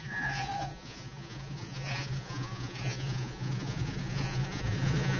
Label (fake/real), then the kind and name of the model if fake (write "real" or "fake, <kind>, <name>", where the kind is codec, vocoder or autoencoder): fake, vocoder, Vocos